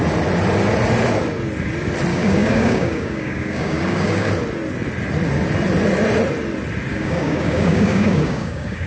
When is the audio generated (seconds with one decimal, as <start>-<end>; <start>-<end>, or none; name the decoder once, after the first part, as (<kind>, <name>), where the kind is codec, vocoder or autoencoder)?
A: 2.1-4.3 (codec, DAC); 6.9-8.9

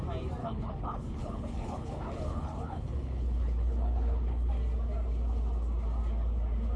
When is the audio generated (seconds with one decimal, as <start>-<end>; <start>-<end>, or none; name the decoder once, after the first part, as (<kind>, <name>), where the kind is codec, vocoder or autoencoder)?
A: 0.4-4.5 (codec, HILCodec)